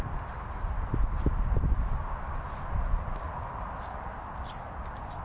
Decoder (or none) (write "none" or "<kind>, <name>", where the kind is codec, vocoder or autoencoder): none